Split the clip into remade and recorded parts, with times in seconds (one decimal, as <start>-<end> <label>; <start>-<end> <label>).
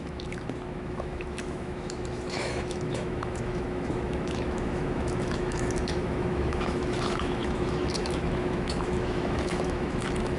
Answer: 0.0-10.4 remade